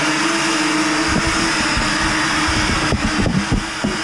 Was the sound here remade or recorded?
recorded